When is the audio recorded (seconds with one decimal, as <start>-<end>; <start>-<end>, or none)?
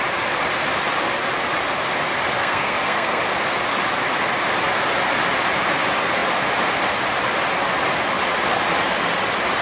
0.0-2.4; 3.2-9.6